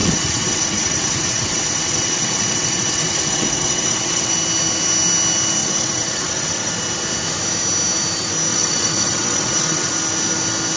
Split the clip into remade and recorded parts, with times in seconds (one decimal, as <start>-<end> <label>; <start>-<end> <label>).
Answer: 0.0-4.3 remade; 4.3-5.6 recorded; 5.6-6.7 remade; 6.7-8.5 recorded; 8.5-9.9 remade; 9.9-10.8 recorded